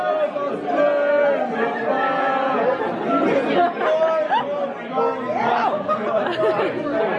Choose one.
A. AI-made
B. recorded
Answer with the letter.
B